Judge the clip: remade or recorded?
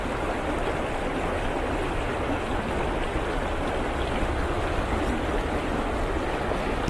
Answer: recorded